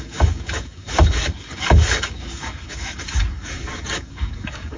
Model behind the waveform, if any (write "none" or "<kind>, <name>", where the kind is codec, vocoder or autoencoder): codec, DAC